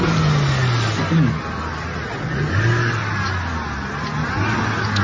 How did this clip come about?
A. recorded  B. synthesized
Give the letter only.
A